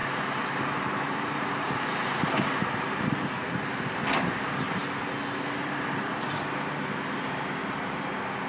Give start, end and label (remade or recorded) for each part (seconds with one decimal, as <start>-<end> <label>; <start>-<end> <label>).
0.0-3.6 remade; 3.6-8.5 recorded